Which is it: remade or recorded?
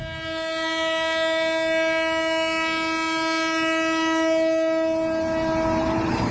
recorded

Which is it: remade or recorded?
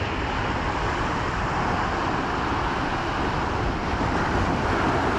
recorded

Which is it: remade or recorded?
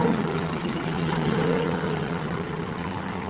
remade